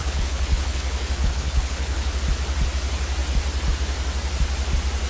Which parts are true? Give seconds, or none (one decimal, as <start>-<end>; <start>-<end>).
2.2-5.1